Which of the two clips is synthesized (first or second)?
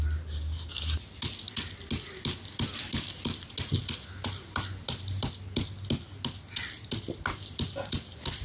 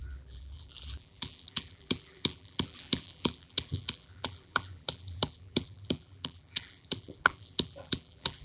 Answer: second